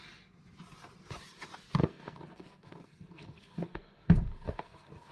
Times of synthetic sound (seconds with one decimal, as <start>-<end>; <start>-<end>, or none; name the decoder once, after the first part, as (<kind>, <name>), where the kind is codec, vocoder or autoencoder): 1.8-5.1 (codec, SNAC)